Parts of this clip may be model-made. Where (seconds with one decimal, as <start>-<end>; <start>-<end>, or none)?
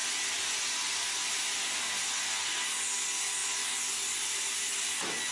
none